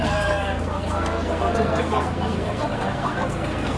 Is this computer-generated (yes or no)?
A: yes